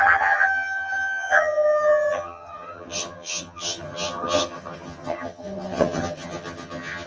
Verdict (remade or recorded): remade